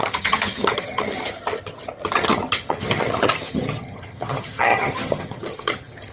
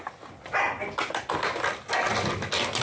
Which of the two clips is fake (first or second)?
first